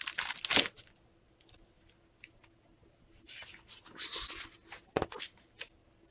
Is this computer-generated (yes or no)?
no